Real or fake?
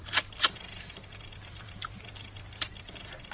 fake